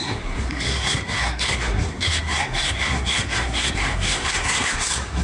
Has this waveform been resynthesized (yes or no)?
yes